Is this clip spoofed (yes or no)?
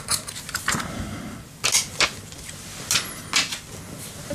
no